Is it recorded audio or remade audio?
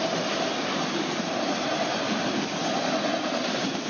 recorded